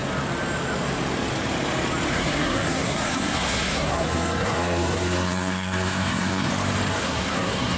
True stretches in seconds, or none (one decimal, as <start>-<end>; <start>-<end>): 0.0-2.1; 6.5-6.9